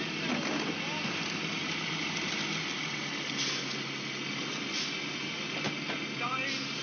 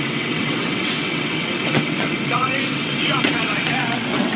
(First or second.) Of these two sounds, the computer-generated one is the second